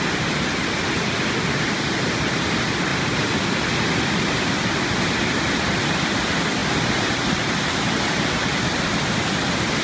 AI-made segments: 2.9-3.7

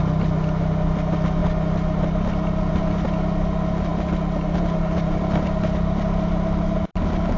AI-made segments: none

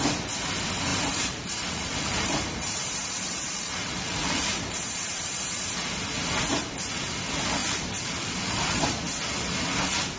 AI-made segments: 0.9-5.3; 7.6-8.8